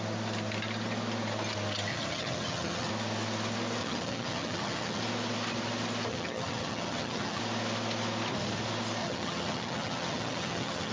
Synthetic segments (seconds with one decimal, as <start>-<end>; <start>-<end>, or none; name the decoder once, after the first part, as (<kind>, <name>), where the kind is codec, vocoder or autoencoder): 1.9-2.9 (vocoder, HiFi-GAN); 3.8-5.0; 6.1-7.4; 9.0-10.9